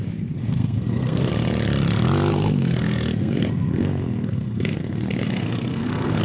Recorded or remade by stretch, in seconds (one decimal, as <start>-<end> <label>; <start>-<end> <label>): 0.0-0.4 recorded; 0.4-1.3 remade; 1.3-2.3 recorded; 2.3-6.2 remade